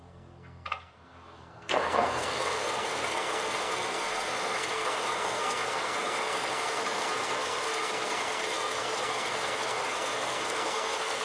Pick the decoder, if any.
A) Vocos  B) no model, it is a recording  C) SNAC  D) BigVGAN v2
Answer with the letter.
C